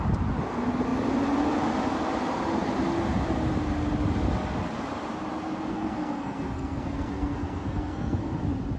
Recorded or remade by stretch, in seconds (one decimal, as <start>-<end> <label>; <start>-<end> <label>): 0.0-5.7 recorded; 5.7-8.4 remade; 8.4-8.8 recorded